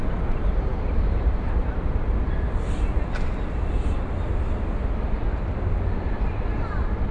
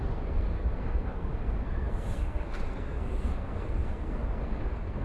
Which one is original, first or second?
first